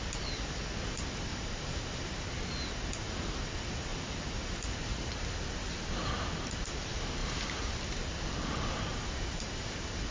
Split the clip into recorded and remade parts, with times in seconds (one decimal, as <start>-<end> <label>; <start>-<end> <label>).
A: 0.0-1.3 recorded; 1.3-2.1 remade; 2.1-3.9 recorded; 3.9-5.9 remade; 5.9-7.2 recorded; 7.2-7.7 remade; 7.7-8.9 recorded; 8.9-9.5 remade; 9.5-10.1 recorded